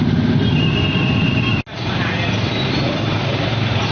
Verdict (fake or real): real